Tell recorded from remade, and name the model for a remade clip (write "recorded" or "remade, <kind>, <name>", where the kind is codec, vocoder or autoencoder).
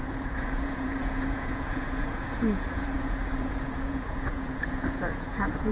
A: remade, vocoder, Vocos